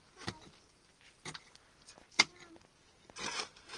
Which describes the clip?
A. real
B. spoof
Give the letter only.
A